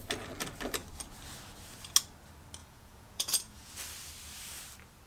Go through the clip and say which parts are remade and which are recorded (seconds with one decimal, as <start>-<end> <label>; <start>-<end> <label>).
0.0-2.6 recorded; 2.6-3.7 remade; 3.7-5.1 recorded